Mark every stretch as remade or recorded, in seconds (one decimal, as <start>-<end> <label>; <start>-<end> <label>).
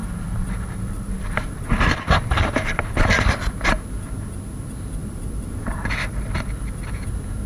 0.0-3.2 remade; 3.2-5.0 recorded; 5.0-6.9 remade; 6.9-7.5 recorded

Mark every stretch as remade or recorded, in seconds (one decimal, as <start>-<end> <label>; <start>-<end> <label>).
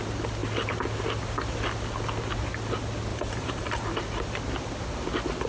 0.0-3.1 recorded; 3.1-3.8 remade; 3.8-5.5 recorded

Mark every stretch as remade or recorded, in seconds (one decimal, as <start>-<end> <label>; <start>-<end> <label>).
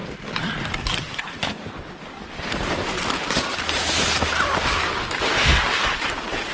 0.0-1.6 remade; 1.6-6.5 recorded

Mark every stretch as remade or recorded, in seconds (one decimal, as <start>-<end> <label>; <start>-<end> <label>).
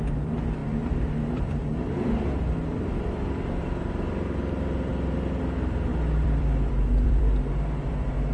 0.0-8.3 remade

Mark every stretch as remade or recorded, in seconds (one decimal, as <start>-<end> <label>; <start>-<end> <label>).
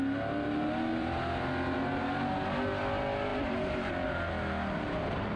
0.0-0.9 recorded; 0.9-1.5 remade; 1.5-3.3 recorded; 3.3-3.9 remade; 3.9-5.4 recorded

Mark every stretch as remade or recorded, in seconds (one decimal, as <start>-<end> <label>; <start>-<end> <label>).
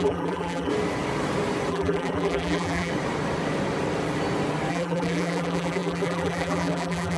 0.0-0.7 remade; 0.7-1.7 recorded; 1.7-2.9 remade; 2.9-4.7 recorded; 4.7-7.2 remade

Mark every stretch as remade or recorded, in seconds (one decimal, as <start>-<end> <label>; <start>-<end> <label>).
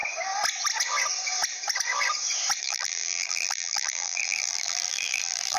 0.0-2.6 recorded; 2.6-5.6 remade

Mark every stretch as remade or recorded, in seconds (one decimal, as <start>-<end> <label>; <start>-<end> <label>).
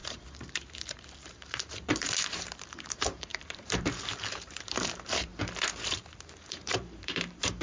0.0-5.3 remade; 5.3-6.3 recorded; 6.3-7.6 remade